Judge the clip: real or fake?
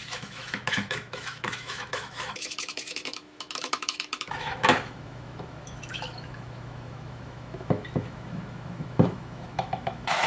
fake